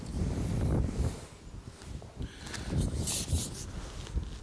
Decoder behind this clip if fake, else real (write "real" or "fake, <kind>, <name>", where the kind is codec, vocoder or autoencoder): real